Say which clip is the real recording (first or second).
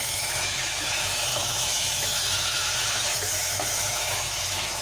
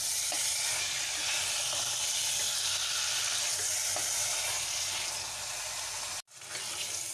second